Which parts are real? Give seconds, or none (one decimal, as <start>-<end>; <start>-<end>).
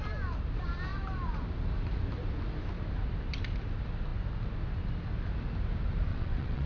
0.0-6.1